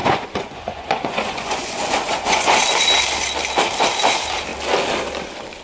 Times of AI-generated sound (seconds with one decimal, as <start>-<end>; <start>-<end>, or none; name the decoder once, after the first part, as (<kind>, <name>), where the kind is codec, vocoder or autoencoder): 0.0-2.6 (vocoder, Vocos)